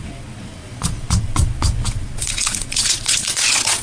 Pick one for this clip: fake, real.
fake